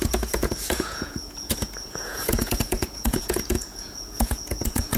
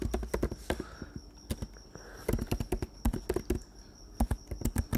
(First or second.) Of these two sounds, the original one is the second